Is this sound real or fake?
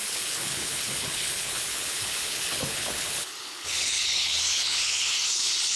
fake